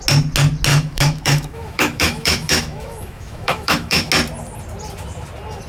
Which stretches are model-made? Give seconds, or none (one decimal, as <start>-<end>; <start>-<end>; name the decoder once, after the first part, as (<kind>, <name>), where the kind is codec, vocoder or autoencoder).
0.7-4.1 (autoencoder, DAC-VAE)